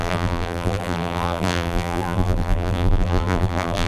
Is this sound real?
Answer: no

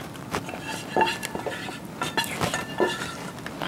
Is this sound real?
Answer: yes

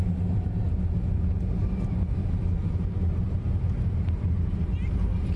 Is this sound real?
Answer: yes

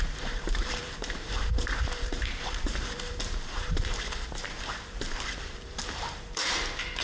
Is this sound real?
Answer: no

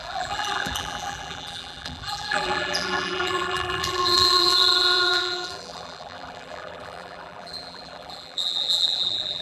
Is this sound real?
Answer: no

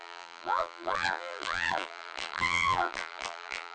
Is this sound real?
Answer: no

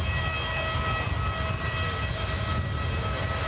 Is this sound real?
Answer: yes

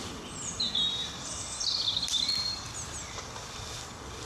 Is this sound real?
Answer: yes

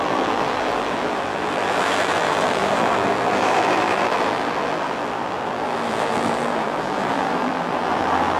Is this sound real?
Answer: no